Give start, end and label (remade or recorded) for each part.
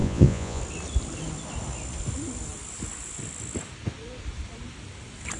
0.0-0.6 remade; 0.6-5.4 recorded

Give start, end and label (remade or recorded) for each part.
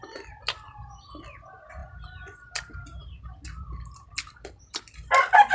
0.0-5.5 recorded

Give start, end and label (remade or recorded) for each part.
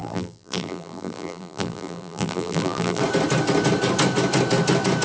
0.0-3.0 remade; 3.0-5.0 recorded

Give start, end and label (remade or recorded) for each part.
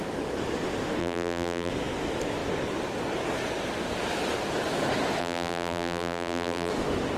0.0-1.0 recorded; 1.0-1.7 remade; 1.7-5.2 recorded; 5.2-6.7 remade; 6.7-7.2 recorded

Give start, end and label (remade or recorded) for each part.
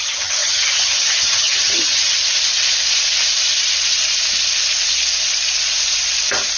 0.0-2.2 remade; 2.2-6.6 recorded